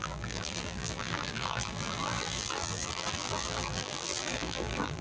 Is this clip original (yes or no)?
no